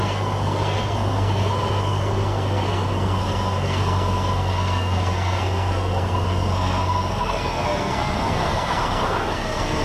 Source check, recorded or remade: remade